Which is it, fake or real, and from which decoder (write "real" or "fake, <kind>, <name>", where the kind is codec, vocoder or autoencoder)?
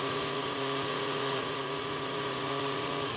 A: fake, vocoder, Vocos